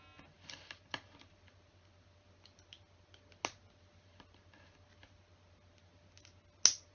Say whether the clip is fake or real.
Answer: real